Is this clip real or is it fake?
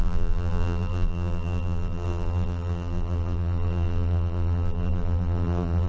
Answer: fake